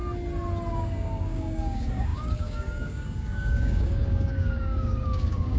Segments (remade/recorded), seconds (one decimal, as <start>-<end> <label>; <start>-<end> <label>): 0.0-0.7 recorded; 0.7-5.6 remade